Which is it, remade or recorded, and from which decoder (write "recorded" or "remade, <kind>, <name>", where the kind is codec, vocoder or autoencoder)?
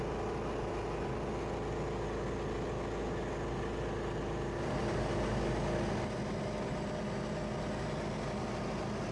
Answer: recorded